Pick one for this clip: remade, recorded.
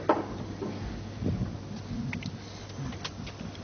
recorded